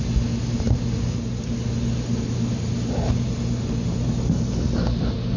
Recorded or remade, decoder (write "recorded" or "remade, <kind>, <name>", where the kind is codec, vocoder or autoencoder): recorded